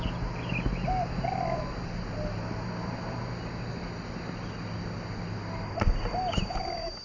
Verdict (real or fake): real